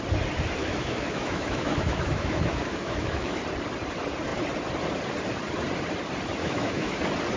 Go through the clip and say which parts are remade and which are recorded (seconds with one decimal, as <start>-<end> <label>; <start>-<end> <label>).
0.0-0.6 recorded; 0.6-3.4 remade; 3.4-6.4 recorded; 6.4-7.0 remade; 7.0-7.4 recorded